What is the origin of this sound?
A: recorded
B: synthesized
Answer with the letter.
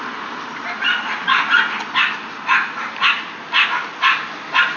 A